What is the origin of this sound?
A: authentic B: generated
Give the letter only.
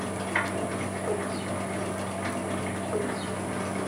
A